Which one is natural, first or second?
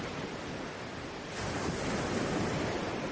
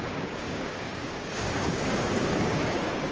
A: first